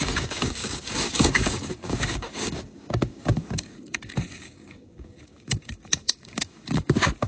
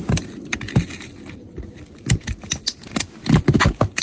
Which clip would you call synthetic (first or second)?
first